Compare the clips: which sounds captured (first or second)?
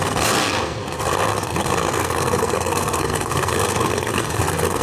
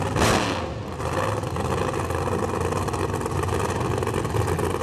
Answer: second